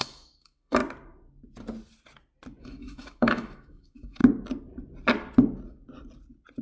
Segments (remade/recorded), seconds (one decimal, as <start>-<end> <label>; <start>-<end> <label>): 0.0-0.8 remade; 0.8-2.6 recorded; 2.6-4.2 remade; 4.2-6.6 recorded